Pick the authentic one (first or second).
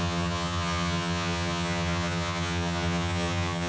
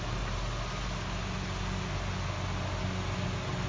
second